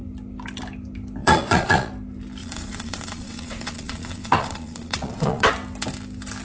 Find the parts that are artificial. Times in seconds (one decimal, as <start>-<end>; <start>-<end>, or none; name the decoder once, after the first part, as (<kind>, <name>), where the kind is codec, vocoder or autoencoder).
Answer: 1.2-1.9 (vocoder, Vocos); 2.4-5.5